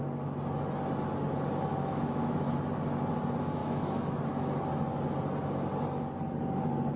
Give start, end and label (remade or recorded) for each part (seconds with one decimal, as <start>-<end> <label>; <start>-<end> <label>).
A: 0.0-1.7 recorded; 1.7-2.4 remade; 2.4-3.6 recorded; 3.6-4.2 remade; 4.2-7.0 recorded